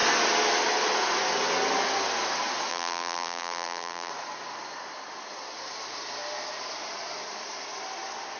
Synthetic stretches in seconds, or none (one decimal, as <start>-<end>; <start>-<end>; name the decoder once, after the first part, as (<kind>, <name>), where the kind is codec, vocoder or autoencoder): 2.7-4.1 (vocoder, BigVGAN v2)